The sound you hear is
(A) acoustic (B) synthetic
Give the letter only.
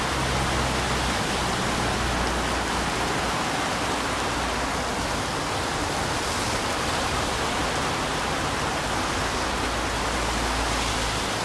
A